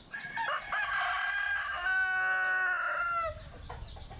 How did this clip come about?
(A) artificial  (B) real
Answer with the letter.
B